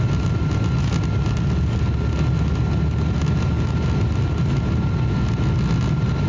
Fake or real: real